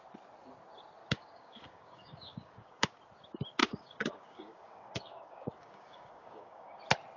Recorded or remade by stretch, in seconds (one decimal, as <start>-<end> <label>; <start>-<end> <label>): 0.0-1.0 recorded; 1.0-3.0 remade; 3.0-3.6 recorded; 3.6-6.8 remade; 6.8-7.2 recorded